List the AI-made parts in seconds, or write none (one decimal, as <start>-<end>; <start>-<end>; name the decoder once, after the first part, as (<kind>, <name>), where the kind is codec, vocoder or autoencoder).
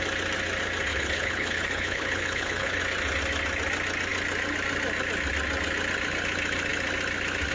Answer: 0.9-2.8 (codec, HILCodec)